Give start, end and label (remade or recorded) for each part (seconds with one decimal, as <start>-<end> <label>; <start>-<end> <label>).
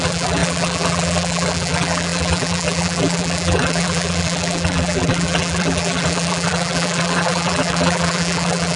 0.0-8.8 remade